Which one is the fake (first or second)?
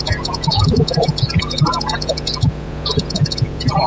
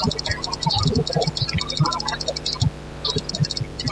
first